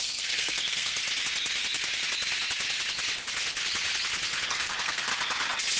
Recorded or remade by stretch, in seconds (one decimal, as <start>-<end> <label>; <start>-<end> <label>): 0.0-1.0 remade; 1.0-4.5 recorded; 4.5-5.1 remade; 5.1-5.8 recorded